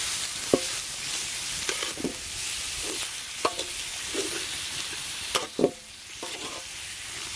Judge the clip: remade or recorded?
recorded